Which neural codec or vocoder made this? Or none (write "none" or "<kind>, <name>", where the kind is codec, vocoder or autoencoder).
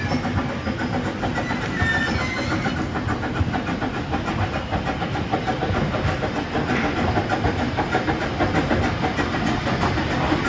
none